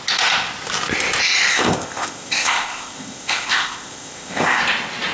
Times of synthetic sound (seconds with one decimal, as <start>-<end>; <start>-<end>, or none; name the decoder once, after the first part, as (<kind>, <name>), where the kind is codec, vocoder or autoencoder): 1.5-4.6 (codec, ZipCodec)